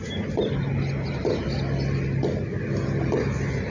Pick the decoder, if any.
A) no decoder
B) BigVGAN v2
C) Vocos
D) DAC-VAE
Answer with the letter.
A